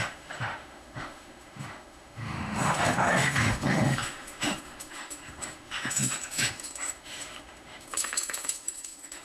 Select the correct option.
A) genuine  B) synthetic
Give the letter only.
B